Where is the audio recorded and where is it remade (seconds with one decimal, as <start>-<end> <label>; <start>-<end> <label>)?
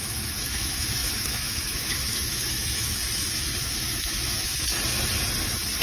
0.0-4.7 remade; 4.7-5.8 recorded